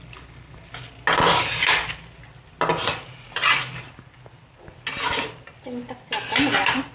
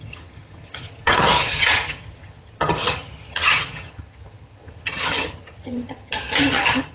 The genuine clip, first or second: first